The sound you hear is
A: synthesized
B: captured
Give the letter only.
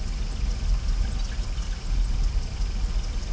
B